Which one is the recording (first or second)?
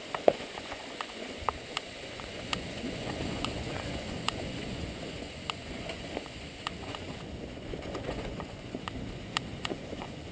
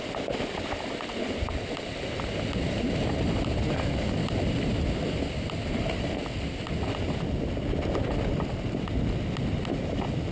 second